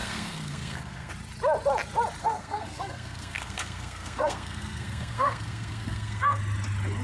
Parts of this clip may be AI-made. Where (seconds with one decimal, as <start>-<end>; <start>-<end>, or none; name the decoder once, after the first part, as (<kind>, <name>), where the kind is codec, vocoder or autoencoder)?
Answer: 0.0-1.1 (codec, SNAC); 2.2-6.4